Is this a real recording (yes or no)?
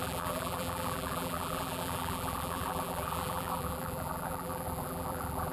no